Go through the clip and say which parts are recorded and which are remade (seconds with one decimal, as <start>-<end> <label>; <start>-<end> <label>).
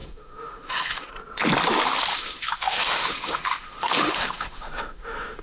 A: 0.0-1.1 remade; 1.1-2.1 recorded; 2.1-5.4 remade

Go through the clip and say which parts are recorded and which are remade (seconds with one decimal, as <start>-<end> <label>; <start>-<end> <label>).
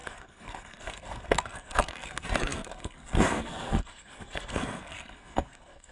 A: 0.0-5.9 remade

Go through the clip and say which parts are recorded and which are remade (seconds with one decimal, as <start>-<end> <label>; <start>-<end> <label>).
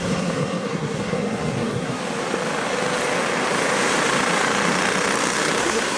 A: 0.0-2.0 remade; 2.0-5.6 recorded; 5.6-6.0 remade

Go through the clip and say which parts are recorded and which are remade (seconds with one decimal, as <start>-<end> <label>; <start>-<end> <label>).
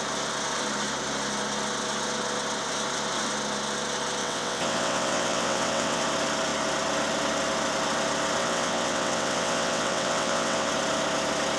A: 0.0-4.2 recorded; 4.2-6.0 remade; 6.0-8.4 recorded; 8.4-10.7 remade; 10.7-11.6 recorded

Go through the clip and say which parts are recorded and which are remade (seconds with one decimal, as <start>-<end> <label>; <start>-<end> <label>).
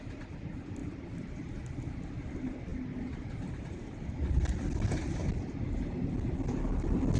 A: 0.0-0.8 recorded; 0.8-1.5 remade; 1.5-7.2 recorded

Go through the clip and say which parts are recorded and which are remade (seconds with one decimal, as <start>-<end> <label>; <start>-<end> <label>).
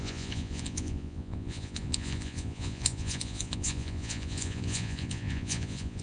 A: 0.0-6.0 remade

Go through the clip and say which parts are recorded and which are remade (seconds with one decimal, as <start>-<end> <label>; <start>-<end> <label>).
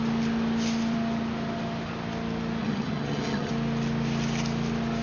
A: 0.0-2.6 recorded; 2.6-3.5 remade; 3.5-5.0 recorded